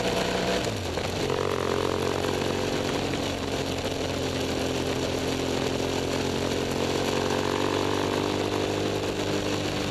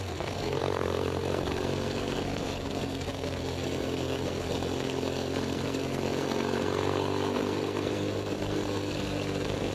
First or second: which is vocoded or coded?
second